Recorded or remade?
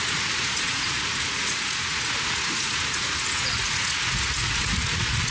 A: remade